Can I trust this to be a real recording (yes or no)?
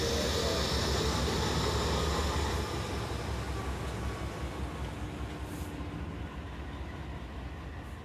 yes